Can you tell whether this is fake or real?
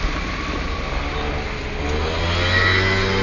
real